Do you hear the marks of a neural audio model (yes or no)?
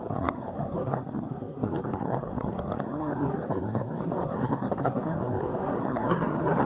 yes